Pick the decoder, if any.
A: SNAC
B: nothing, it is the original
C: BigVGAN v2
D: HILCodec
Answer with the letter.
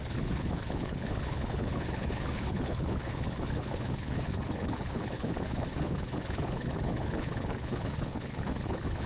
D